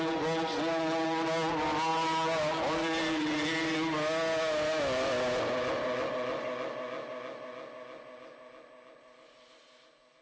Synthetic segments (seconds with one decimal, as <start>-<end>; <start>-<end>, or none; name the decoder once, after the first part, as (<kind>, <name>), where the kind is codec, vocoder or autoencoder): none